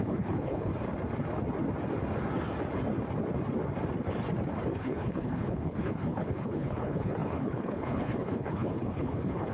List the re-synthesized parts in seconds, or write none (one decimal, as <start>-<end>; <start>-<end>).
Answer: 0.0-0.7; 4.8-9.5